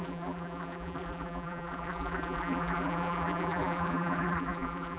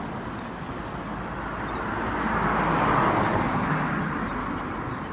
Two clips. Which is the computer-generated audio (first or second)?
first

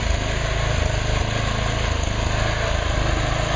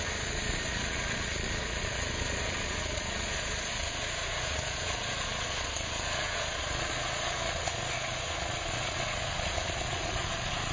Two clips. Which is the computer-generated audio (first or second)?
second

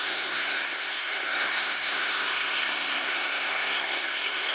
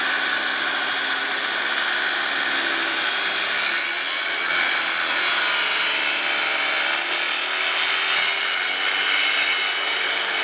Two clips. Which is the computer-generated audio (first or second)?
first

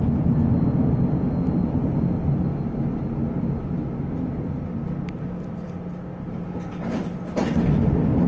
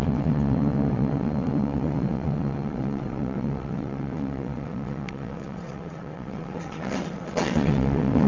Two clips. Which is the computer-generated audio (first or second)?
second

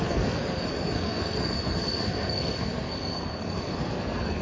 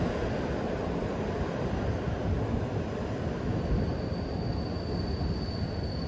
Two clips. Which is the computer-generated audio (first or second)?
first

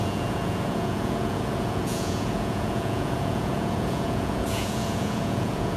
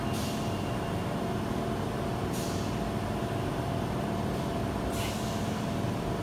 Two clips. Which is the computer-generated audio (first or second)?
first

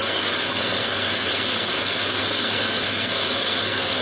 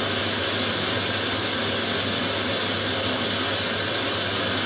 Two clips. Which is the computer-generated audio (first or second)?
first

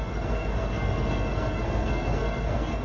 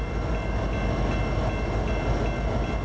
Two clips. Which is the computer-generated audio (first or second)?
first